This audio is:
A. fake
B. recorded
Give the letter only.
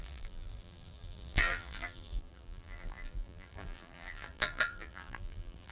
A